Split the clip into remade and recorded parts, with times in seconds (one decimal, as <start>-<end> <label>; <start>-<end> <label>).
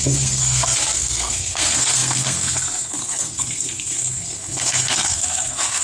0.0-5.8 remade